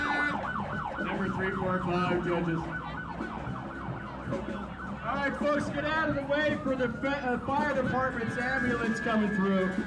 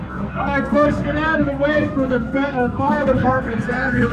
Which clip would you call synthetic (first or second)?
second